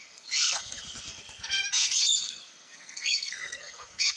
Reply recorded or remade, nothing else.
remade